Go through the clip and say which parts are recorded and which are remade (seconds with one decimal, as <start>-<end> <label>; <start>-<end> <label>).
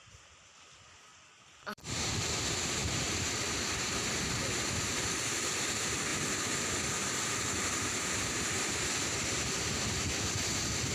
0.0-1.1 recorded; 1.1-2.3 remade; 2.3-2.8 recorded; 2.8-5.2 remade; 5.2-10.9 recorded